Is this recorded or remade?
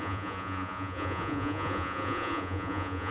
remade